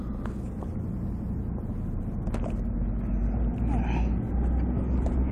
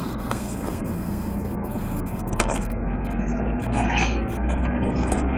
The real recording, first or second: first